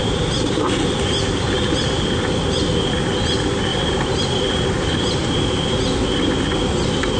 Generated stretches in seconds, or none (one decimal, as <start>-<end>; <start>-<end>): 0.0-0.9; 3.7-4.7